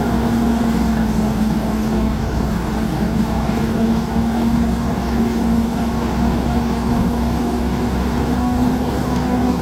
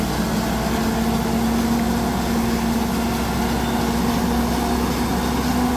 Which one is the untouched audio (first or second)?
second